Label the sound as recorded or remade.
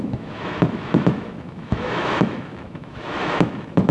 remade